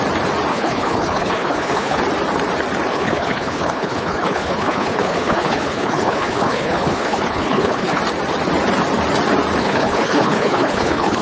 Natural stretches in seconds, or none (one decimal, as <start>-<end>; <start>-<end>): 0.0-0.5; 2.0-2.9; 8.0-9.6